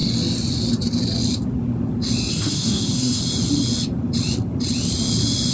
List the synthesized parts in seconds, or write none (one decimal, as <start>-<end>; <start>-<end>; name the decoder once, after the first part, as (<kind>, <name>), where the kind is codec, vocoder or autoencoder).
2.3-3.2 (codec, SNAC)